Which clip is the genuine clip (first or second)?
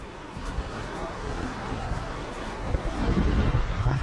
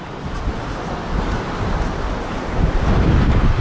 second